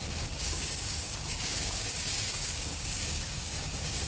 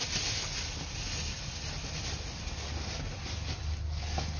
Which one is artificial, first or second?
first